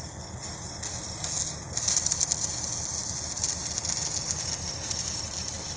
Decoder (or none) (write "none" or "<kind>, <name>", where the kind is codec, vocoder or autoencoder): none